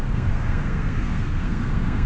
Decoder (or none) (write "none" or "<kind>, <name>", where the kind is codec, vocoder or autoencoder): codec, SNAC